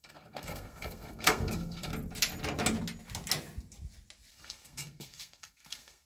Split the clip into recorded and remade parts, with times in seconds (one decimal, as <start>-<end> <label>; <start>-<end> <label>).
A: 0.0-1.9 remade; 1.9-4.3 recorded; 4.3-6.0 remade